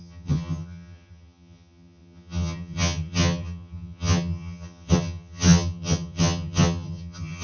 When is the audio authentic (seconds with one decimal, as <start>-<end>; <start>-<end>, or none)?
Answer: none